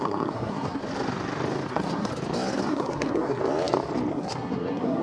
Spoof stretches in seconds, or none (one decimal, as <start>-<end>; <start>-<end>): 0.0-0.8; 1.7-2.1; 2.7-3.4; 4.1-5.0